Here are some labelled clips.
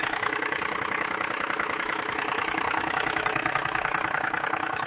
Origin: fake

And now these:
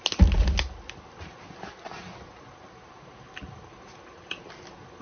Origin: real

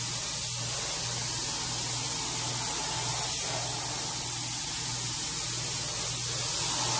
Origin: real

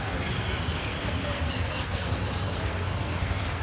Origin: fake